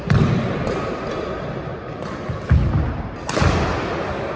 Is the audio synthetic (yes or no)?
no